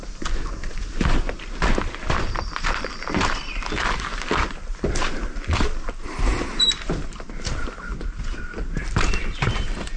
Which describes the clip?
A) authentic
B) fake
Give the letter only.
B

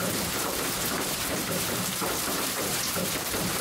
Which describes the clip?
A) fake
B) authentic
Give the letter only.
A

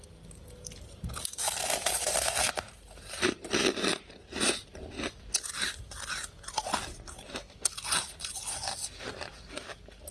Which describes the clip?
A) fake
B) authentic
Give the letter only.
B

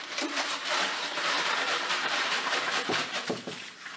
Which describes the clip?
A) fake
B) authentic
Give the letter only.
A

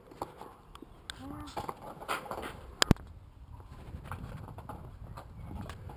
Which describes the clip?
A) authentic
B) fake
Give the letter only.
A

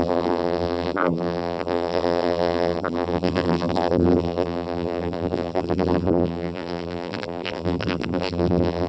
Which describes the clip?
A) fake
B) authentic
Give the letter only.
A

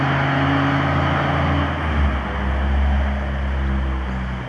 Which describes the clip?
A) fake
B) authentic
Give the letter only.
B